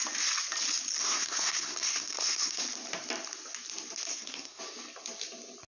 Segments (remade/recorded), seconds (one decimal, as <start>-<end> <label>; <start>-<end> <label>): 0.0-1.0 recorded; 1.0-2.6 remade; 2.6-4.1 recorded; 4.1-4.6 remade; 4.6-5.7 recorded